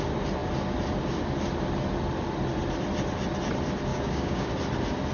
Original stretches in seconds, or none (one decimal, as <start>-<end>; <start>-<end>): 0.0-3.9; 4.5-5.1